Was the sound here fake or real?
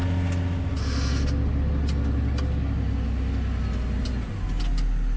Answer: real